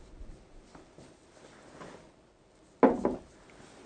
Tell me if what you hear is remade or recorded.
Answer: recorded